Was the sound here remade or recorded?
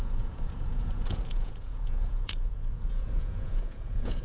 remade